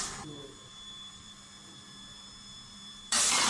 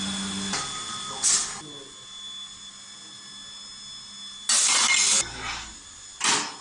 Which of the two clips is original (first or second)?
second